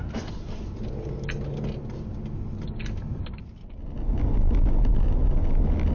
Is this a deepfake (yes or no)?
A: no